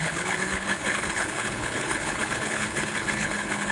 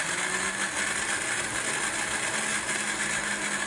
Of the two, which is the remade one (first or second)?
first